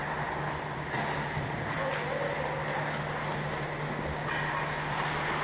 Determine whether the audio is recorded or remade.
recorded